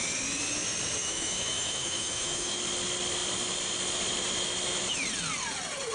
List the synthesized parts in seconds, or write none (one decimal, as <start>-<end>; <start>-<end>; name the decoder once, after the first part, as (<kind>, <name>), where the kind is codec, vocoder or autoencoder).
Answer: 1.0-2.6 (autoencoder, DAC-VAE)